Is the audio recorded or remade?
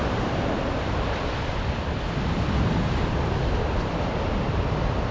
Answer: remade